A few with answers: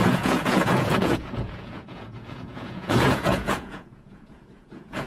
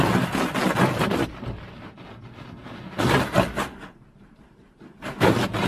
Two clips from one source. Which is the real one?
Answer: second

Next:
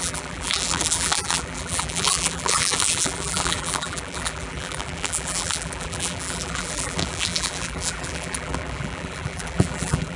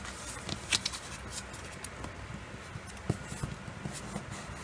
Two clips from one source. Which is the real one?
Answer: second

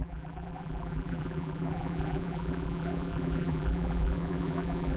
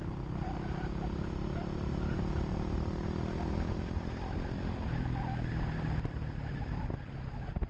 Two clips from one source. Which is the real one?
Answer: second